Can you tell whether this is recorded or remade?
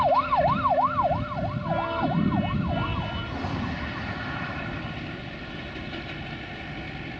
recorded